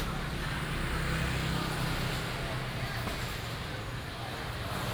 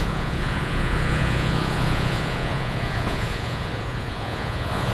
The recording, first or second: first